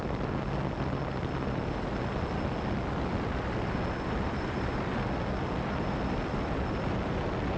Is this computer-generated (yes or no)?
no